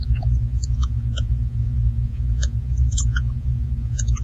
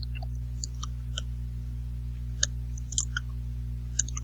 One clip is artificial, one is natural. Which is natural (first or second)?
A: second